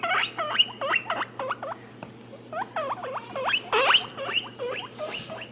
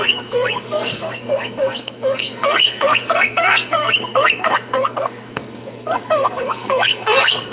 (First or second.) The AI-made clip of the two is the second